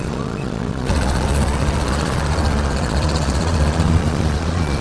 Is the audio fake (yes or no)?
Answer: yes